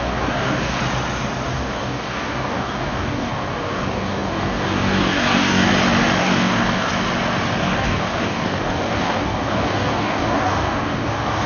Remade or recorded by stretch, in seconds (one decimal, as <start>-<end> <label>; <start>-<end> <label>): 0.0-0.8 remade; 0.8-1.5 recorded; 1.5-5.7 remade; 5.7-6.2 recorded; 6.2-6.9 remade; 6.9-7.6 recorded; 7.6-11.5 remade